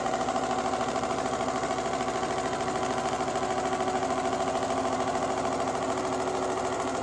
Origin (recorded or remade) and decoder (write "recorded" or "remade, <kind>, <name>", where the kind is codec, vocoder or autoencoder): recorded